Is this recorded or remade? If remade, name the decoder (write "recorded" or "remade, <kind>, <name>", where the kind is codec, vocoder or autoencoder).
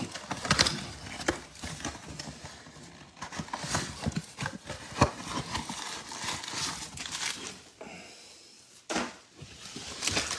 recorded